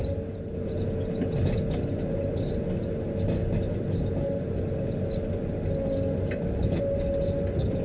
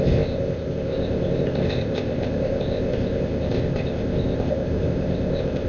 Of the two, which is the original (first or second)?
first